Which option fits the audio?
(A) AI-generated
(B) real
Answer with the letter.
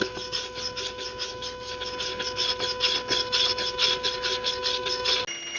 B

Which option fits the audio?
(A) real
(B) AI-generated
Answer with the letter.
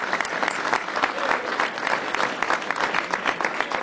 A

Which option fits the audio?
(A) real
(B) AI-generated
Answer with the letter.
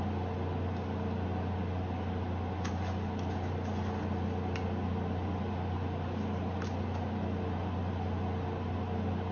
A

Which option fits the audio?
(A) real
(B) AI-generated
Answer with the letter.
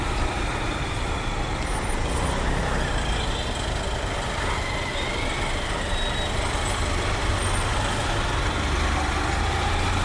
A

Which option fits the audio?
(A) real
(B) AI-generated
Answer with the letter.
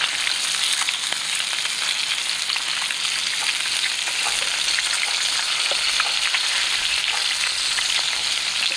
A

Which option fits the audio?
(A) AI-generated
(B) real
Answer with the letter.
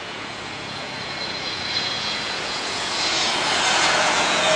A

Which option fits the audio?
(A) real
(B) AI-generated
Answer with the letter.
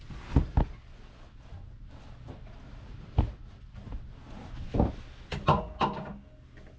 A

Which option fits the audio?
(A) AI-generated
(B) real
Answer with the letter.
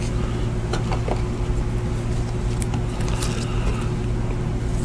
B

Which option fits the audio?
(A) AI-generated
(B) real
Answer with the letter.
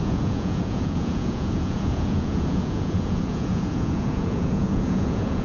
A